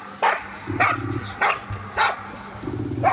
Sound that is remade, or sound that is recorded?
recorded